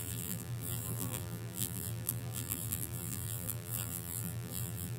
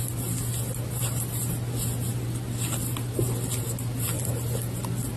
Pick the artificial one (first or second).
first